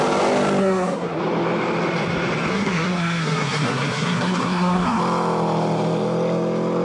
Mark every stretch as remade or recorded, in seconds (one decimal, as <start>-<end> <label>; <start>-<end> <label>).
0.0-0.6 recorded; 0.6-1.2 remade; 1.2-2.5 recorded; 2.5-5.0 remade; 5.0-6.8 recorded